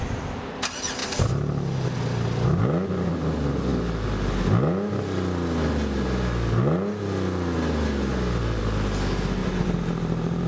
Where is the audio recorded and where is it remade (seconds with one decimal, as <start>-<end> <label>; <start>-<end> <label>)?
0.0-9.4 recorded; 9.4-10.5 remade